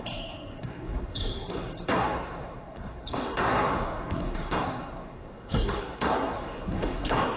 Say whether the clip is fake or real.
fake